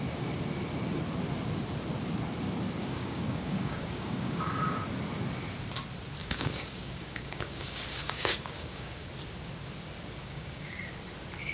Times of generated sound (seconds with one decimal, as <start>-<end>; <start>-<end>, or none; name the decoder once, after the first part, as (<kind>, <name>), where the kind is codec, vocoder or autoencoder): 2.8-4.5 (codec, DAC); 6.2-9.1; 10.2-10.8